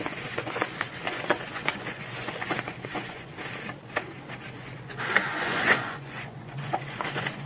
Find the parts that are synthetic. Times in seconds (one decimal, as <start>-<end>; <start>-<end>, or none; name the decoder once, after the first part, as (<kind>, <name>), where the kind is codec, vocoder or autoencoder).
0.0-3.3 (vocoder, Vocos); 4.5-7.5